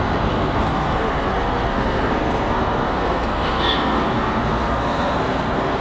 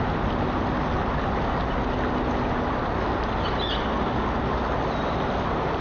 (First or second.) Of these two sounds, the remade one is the first